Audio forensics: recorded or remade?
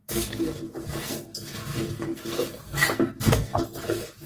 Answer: remade